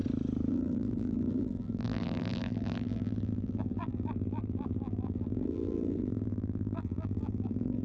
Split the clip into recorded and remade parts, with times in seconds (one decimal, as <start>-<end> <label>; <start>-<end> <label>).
0.0-0.5 recorded; 0.5-7.8 remade